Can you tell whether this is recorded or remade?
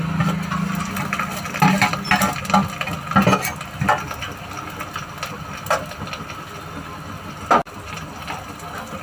recorded